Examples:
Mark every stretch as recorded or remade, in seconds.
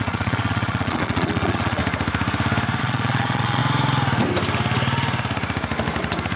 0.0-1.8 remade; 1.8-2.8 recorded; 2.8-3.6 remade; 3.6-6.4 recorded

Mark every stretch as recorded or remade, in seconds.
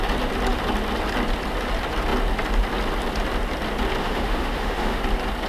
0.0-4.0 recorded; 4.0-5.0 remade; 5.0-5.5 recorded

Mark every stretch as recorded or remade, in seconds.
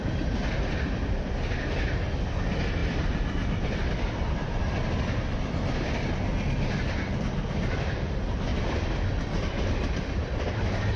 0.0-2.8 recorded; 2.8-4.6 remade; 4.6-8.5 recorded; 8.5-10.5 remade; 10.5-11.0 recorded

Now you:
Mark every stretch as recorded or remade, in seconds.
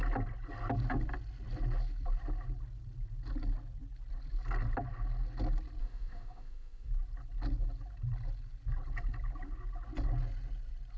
0.0-5.8 recorded; 5.8-6.9 remade; 6.9-11.0 recorded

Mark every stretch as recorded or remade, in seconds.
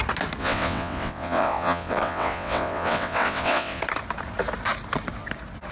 0.0-0.4 recorded; 0.4-3.8 remade; 3.8-5.7 recorded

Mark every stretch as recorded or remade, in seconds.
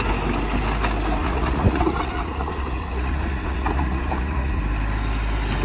0.0-1.2 recorded; 1.2-4.6 remade; 4.6-5.6 recorded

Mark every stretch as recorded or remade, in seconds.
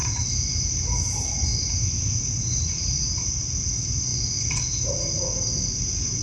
0.0-1.5 remade; 1.5-2.0 recorded; 2.0-6.2 remade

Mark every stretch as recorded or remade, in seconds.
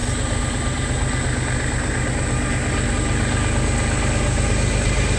0.0-5.2 recorded